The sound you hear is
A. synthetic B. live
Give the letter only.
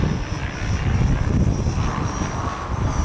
B